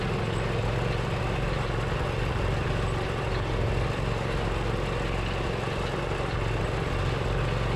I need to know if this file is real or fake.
real